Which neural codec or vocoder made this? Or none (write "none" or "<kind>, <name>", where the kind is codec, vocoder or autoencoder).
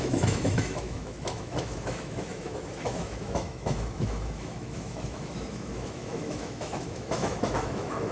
autoencoder, DAC-VAE